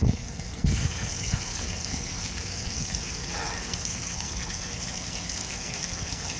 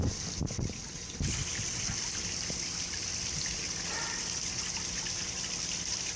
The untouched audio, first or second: second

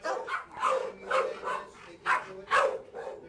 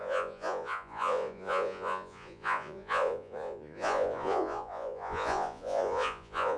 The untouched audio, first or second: first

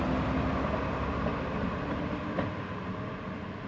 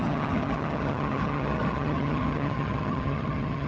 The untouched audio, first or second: first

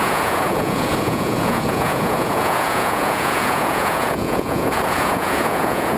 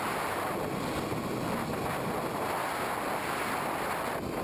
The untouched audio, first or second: second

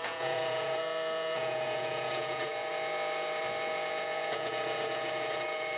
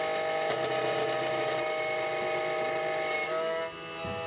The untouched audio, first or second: second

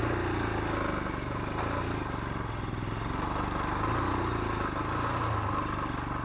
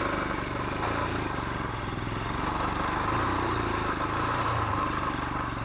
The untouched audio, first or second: first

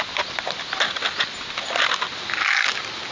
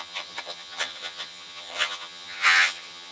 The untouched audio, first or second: first